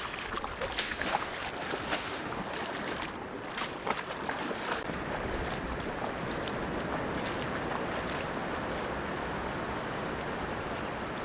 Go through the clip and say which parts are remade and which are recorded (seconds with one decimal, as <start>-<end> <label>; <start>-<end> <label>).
0.0-0.8 recorded; 0.8-1.3 remade; 1.3-1.9 recorded; 1.9-2.4 remade; 2.4-11.2 recorded